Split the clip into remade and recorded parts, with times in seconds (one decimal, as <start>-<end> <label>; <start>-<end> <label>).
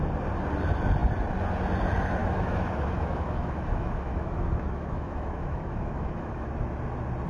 0.0-2.2 recorded; 2.2-6.5 remade; 6.5-7.3 recorded